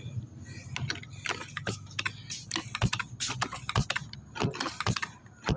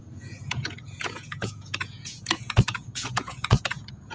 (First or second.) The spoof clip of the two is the second